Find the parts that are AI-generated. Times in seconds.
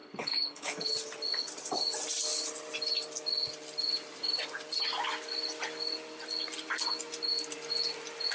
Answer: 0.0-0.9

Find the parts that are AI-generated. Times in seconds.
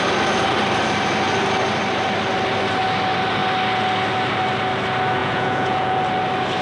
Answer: 5.2-6.0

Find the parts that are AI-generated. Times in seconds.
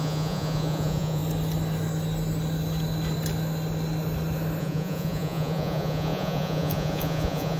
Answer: 0.0-1.2; 4.6-7.6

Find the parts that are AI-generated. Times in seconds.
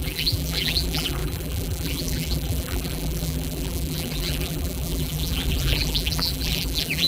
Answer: 0.0-7.1